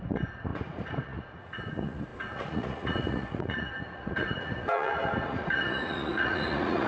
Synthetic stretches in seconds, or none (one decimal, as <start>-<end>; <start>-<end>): 0.0-6.9